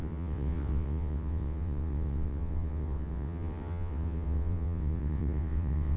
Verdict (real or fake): fake